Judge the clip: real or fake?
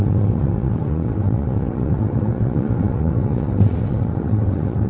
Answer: fake